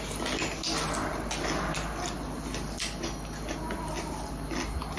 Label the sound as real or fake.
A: real